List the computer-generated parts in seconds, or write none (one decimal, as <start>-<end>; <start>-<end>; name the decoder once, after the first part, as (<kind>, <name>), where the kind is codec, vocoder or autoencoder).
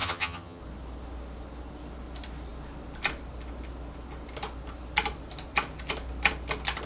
0.0-0.6 (vocoder, HiFi-GAN)